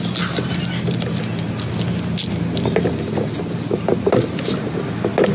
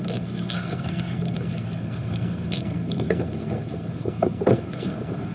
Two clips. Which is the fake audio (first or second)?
second